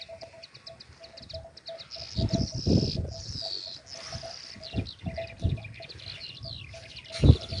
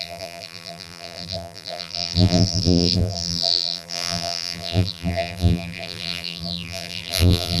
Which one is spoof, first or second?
second